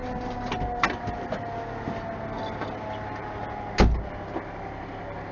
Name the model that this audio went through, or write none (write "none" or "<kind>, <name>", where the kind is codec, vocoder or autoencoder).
none